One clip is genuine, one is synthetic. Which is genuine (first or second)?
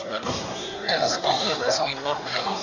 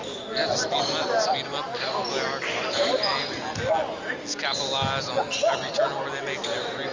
second